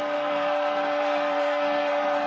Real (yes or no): no